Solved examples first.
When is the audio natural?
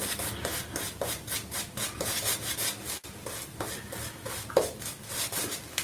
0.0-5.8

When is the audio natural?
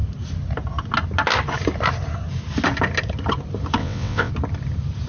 0.0-3.8; 4.3-5.1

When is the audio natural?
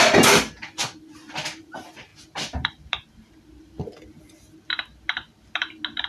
0.0-6.1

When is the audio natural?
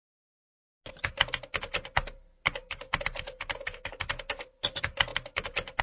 0.0-5.8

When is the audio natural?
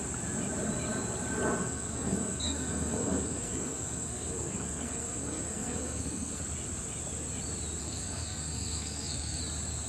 0.0-1.6; 6.4-7.8; 9.4-9.9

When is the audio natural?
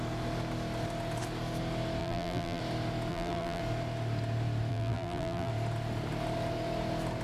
0.0-2.0; 2.6-3.1; 3.6-4.7; 5.5-7.2